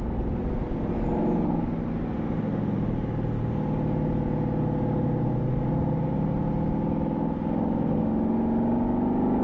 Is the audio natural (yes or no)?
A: yes